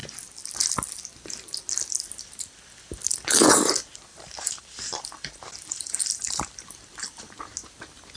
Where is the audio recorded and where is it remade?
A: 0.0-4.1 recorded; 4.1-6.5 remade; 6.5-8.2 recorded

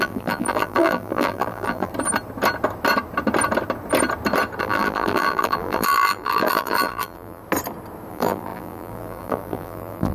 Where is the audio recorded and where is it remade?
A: 0.0-1.9 remade; 1.9-4.6 recorded; 4.6-7.4 remade; 7.4-8.1 recorded; 8.1-10.1 remade